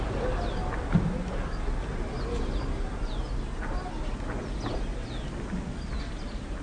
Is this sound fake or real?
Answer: real